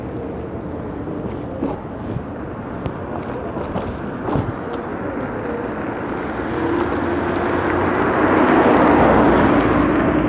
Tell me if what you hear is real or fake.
real